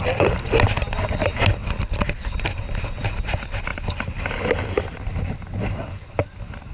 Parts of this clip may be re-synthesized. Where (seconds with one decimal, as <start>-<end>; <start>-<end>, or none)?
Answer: none